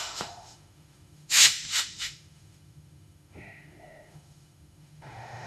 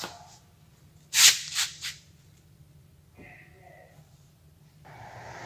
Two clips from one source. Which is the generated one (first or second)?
first